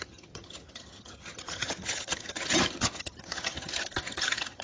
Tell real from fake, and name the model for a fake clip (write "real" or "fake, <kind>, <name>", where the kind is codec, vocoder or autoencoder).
fake, vocoder, HiFi-GAN